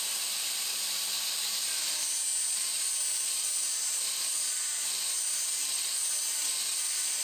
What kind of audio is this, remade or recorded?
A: remade